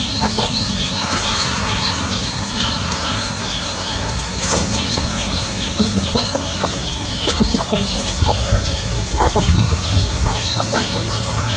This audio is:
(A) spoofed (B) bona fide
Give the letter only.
A